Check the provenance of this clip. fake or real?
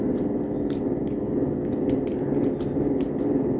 real